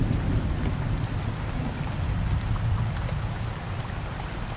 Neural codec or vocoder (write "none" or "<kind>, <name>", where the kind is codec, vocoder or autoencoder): none